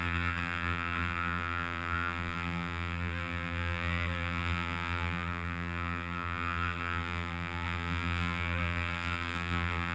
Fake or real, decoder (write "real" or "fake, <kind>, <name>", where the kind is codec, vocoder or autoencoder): fake, vocoder, BigVGAN v2